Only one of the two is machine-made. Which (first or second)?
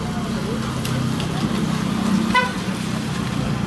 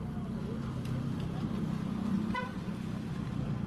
second